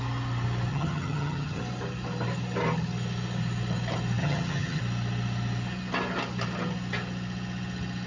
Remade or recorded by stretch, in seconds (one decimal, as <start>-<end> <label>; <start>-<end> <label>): 0.0-0.7 recorded; 0.7-1.6 remade; 1.6-4.2 recorded; 4.2-4.8 remade; 4.8-8.1 recorded